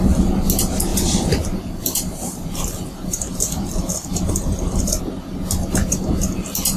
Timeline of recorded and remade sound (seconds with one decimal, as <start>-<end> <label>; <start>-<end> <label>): 0.0-0.9 recorded; 0.9-5.0 remade; 5.0-5.8 recorded; 5.8-6.8 remade

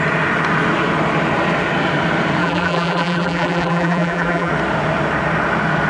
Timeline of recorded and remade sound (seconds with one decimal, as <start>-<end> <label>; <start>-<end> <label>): 0.0-2.4 recorded; 2.4-4.5 remade; 4.5-5.9 recorded

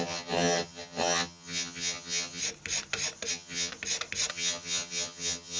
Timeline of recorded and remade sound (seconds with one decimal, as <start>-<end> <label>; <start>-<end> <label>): 0.0-2.4 remade; 2.4-3.3 recorded; 3.3-3.7 remade; 3.7-4.3 recorded; 4.3-5.6 remade

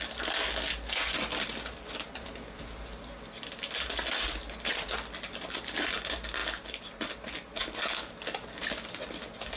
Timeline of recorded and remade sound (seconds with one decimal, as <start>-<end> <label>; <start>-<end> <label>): 0.0-9.6 recorded